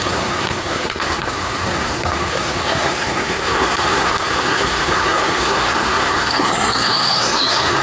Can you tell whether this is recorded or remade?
remade